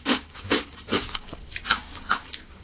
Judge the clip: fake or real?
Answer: fake